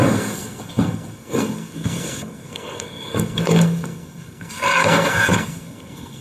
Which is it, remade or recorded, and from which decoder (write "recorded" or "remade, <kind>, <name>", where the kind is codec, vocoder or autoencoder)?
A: remade, codec, SNAC